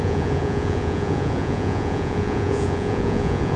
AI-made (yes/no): yes